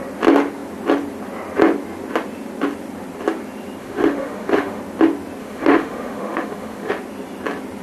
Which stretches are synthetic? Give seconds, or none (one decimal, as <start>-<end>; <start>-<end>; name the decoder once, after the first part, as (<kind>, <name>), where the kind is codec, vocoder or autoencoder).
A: 3.8-4.8 (autoencoder, DAC-VAE); 5.4-6.9